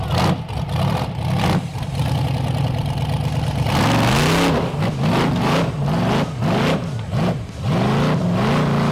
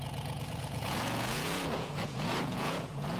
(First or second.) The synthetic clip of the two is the second